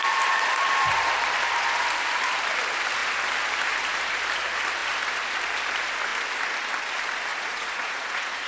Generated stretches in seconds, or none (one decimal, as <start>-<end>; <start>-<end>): 7.3-8.5

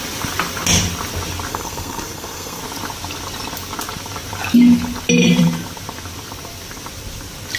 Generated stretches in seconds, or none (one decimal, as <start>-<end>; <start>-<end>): 1.5-2.6

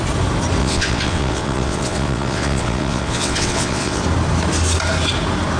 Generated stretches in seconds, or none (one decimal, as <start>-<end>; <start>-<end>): 0.6-4.0